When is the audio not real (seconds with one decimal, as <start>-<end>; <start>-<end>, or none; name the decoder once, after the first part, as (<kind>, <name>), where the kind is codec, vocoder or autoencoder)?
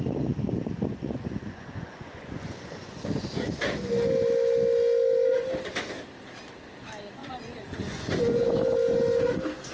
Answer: 0.9-3.6 (vocoder, Vocos); 7.2-8.2